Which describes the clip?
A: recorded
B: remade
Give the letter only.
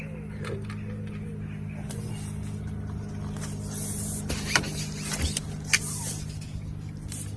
A